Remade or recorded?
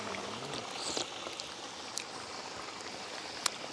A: recorded